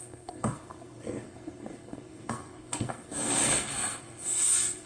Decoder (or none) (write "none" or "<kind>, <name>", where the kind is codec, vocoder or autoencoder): codec, SNAC